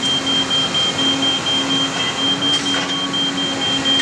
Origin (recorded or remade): recorded